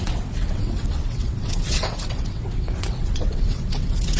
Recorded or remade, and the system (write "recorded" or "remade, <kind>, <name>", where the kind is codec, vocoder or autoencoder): remade, vocoder, WaveNeXt